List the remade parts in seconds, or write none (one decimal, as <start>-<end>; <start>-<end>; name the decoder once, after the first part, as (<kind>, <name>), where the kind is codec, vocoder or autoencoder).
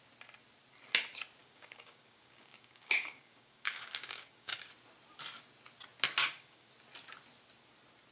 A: 1.4-4.5 (codec, DAC); 6.2-6.7